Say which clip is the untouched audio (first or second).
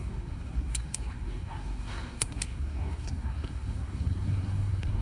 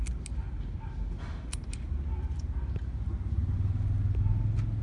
second